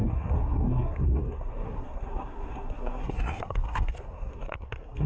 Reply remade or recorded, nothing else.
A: remade